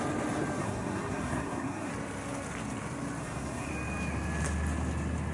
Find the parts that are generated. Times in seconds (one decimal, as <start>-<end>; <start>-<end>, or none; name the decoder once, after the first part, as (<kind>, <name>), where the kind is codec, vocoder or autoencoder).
0.6-1.9 (codec, SNAC); 3.2-3.7